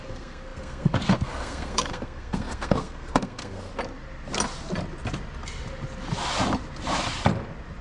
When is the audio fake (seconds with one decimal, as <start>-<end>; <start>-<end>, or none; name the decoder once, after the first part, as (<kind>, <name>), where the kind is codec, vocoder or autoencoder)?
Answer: 0.0-3.7 (codec, SNAC)